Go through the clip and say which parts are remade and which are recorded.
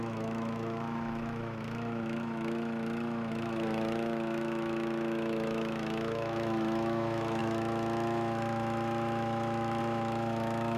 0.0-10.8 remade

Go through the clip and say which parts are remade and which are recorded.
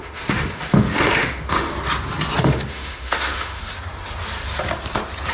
0.0-1.7 remade; 1.7-2.4 recorded; 2.4-3.6 remade; 3.6-5.3 recorded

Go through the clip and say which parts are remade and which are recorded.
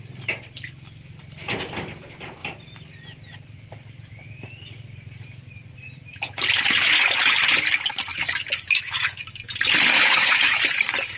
0.0-8.1 recorded; 8.1-9.5 remade; 9.5-9.9 recorded; 9.9-10.6 remade; 10.6-11.2 recorded